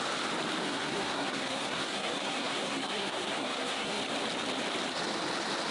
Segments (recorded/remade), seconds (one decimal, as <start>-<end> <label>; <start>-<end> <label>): 0.0-0.6 recorded; 0.6-4.0 remade; 4.0-5.7 recorded